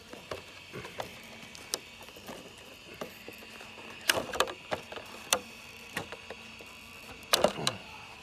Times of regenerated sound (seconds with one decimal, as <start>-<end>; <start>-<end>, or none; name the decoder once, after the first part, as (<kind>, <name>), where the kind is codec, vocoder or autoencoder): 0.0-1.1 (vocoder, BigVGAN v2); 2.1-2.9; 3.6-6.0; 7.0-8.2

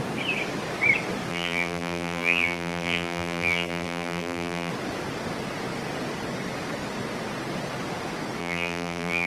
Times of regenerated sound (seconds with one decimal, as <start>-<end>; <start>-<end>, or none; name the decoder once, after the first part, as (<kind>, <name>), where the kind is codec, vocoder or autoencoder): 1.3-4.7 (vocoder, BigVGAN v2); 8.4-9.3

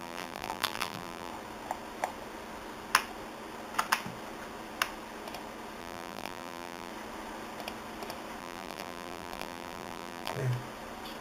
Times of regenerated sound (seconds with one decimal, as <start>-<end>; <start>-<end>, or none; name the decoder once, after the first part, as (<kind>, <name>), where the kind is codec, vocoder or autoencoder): 0.0-1.3 (vocoder, BigVGAN v2); 5.8-6.9; 8.4-10.4

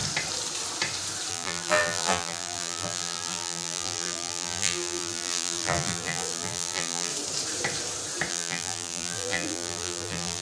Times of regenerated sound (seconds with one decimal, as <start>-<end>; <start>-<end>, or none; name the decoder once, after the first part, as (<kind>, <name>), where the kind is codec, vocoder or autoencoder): 1.3-7.1 (vocoder, BigVGAN v2); 8.3-10.4

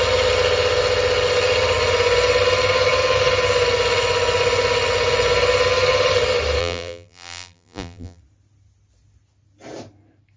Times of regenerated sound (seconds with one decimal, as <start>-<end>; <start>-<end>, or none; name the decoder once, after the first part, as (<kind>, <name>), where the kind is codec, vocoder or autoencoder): 6.6-8.2 (vocoder, BigVGAN v2)